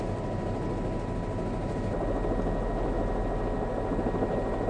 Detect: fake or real real